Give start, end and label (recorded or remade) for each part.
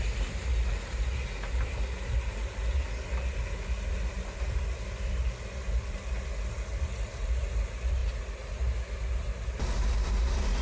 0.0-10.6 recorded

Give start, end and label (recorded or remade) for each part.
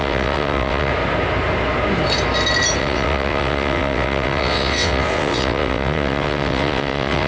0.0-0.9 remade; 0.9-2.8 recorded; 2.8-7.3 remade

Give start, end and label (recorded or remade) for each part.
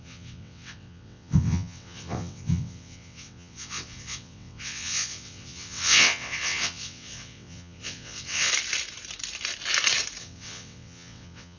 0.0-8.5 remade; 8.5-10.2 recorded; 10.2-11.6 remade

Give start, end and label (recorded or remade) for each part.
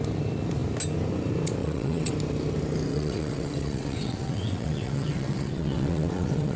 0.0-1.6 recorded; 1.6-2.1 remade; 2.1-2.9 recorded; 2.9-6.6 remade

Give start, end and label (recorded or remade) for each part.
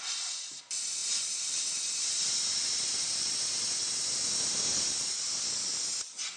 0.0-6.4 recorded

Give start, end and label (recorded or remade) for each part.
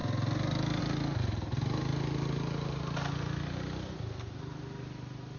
0.0-5.4 recorded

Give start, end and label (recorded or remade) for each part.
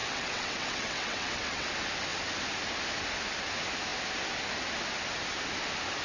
0.0-1.7 remade; 1.7-6.0 recorded